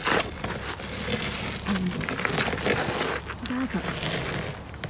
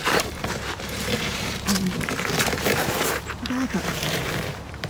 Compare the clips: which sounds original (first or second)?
first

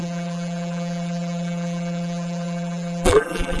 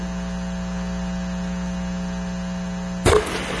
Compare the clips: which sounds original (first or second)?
second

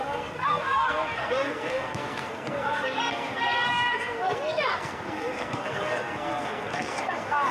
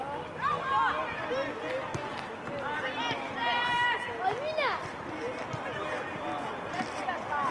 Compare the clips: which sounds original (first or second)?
second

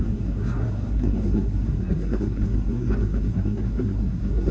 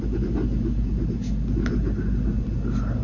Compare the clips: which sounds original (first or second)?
second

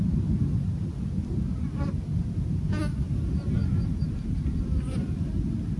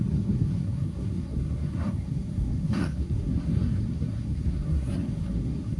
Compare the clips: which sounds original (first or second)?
first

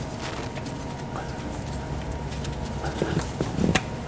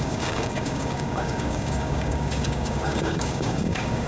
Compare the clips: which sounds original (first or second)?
first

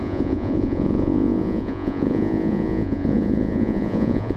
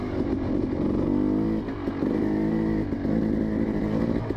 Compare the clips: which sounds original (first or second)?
second